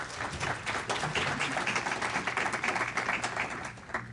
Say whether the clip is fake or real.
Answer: real